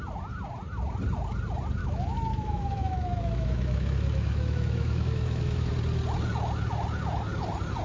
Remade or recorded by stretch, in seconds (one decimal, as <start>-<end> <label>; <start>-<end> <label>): 0.0-1.8 recorded; 1.8-5.7 remade; 5.7-7.8 recorded